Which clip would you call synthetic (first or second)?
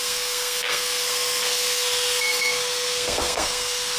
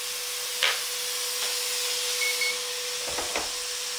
first